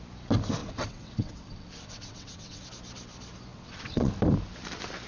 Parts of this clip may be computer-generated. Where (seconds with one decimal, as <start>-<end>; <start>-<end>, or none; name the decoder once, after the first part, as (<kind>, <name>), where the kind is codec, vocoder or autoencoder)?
0.6-2.6 (vocoder, WaveNeXt); 3.5-4.1